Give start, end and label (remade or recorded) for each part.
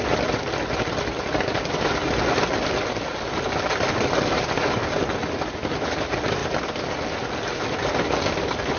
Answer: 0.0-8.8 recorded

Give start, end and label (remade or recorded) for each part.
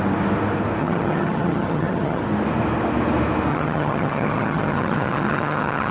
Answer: 0.0-0.8 recorded; 0.8-2.2 remade; 2.2-3.5 recorded; 3.5-5.9 remade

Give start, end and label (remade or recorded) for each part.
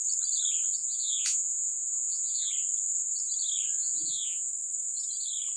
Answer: 0.0-0.8 recorded; 0.8-2.5 remade; 2.5-3.8 recorded; 3.8-4.5 remade; 4.5-5.6 recorded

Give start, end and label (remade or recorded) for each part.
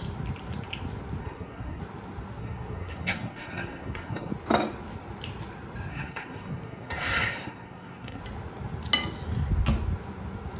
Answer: 0.0-1.2 recorded; 1.2-1.8 remade; 1.8-2.4 recorded; 2.4-4.3 remade; 4.3-5.9 recorded; 5.9-8.2 remade; 8.2-10.6 recorded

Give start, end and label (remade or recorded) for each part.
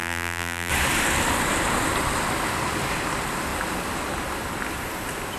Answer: 0.0-0.7 remade; 0.7-5.4 recorded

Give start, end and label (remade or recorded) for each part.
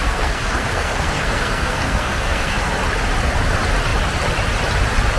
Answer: 0.0-2.7 remade; 2.7-5.2 recorded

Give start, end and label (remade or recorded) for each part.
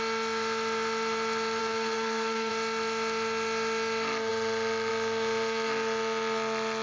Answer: 0.0-1.6 recorded; 1.6-2.5 remade; 2.5-6.8 recorded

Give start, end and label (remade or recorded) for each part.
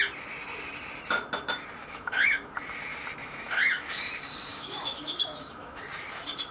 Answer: 0.0-1.8 recorded; 1.8-2.5 remade; 2.5-3.2 recorded; 3.2-3.9 remade; 3.9-4.5 recorded; 4.5-5.8 remade; 5.8-6.5 recorded